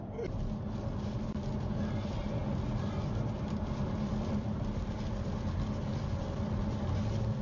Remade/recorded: recorded